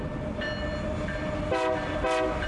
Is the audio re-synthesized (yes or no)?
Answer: no